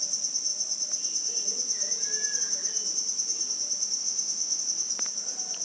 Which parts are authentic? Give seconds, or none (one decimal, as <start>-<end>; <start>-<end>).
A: 0.0-4.0; 4.6-5.6